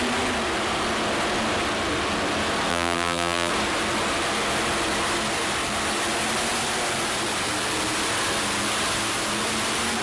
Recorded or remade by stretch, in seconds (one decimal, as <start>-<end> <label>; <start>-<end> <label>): 0.0-2.7 recorded; 2.7-3.5 remade; 3.5-10.0 recorded